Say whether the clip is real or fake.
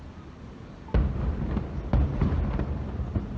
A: real